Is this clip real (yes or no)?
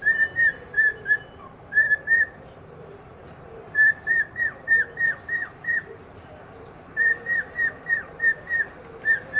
yes